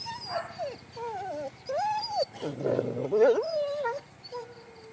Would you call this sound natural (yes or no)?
yes